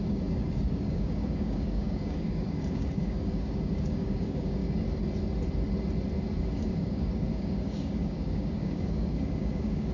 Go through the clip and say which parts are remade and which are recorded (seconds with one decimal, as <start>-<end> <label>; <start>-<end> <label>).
0.0-4.6 remade; 4.6-6.4 recorded; 6.4-9.9 remade

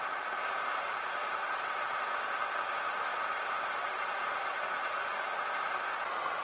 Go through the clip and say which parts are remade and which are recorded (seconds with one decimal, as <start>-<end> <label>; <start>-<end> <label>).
0.0-6.4 recorded